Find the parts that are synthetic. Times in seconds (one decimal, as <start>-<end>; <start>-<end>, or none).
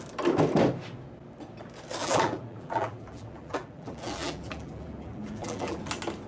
2.0-5.8